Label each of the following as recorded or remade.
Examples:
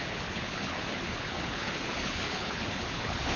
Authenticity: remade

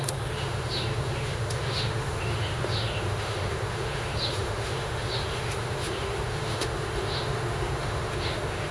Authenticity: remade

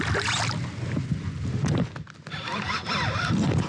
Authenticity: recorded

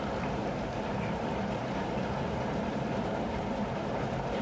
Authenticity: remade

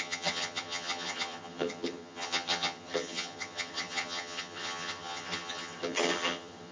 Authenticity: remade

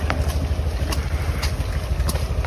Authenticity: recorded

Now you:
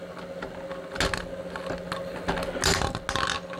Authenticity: recorded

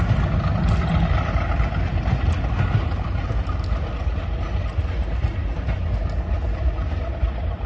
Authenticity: recorded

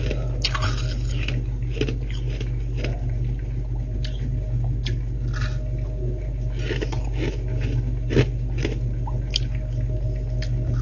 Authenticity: recorded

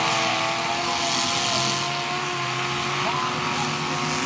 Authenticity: recorded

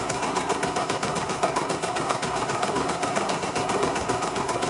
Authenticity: remade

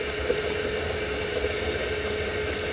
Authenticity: recorded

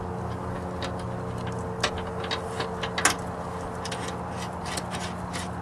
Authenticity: recorded